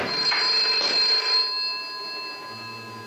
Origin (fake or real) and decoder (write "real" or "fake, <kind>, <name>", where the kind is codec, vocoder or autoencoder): real